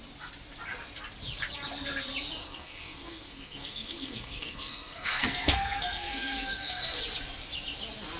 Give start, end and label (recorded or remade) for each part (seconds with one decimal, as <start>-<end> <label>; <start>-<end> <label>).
0.0-2.4 recorded; 2.4-7.0 remade; 7.0-8.2 recorded